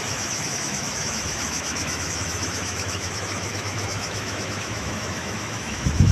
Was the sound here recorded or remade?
remade